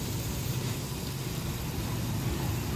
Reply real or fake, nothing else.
real